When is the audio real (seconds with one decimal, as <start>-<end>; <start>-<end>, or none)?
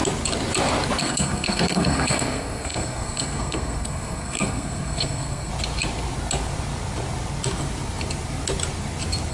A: 0.0-1.0; 5.5-9.3